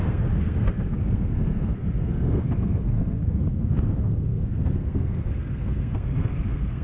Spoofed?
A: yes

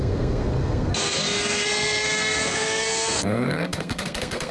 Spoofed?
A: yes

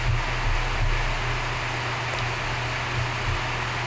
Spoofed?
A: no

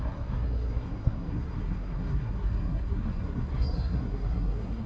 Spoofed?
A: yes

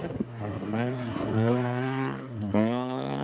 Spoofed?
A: yes